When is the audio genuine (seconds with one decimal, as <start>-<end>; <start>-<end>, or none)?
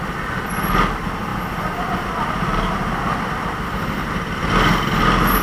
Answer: 0.0-5.4